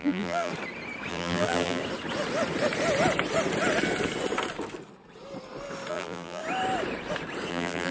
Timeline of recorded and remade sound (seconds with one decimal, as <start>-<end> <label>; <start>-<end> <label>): 0.0-0.5 remade; 0.5-1.1 recorded; 1.1-1.8 remade; 1.8-5.9 recorded; 5.9-6.4 remade; 6.4-7.5 recorded; 7.5-7.9 remade